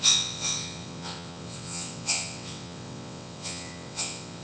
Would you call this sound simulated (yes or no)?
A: yes